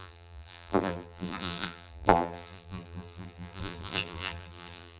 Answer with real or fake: fake